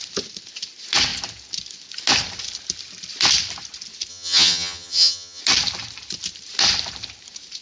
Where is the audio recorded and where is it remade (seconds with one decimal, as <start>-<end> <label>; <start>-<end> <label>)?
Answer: 0.0-4.1 recorded; 4.1-5.4 remade; 5.4-7.6 recorded